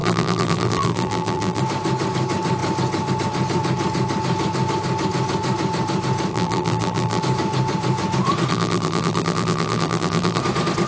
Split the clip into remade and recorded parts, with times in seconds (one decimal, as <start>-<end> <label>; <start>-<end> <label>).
0.0-1.6 remade; 1.6-6.3 recorded; 6.3-7.2 remade; 7.2-8.5 recorded; 8.5-10.4 remade; 10.4-10.9 recorded